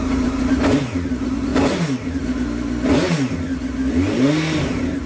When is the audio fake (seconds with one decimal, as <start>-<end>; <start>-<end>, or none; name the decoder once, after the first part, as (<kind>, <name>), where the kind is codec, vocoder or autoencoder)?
none